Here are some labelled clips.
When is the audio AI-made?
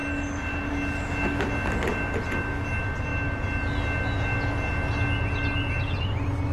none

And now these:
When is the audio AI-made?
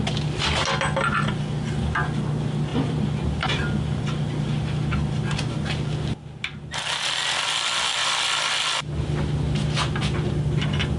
2.7-3.3 (vocoder, BigVGAN v2); 8.0-8.5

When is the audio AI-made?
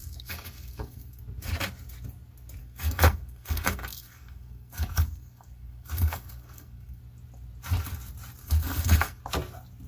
0.0-1.2 (codec, SNAC); 2.6-7.0; 8.4-9.2